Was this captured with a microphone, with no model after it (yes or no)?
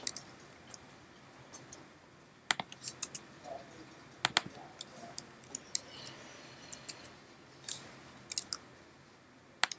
yes